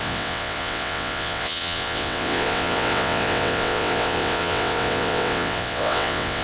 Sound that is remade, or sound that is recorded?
remade